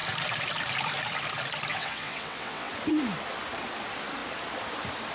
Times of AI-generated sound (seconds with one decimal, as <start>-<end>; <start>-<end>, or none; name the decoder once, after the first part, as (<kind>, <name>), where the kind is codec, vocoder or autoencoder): 1.7-2.7 (vocoder, WaveNeXt)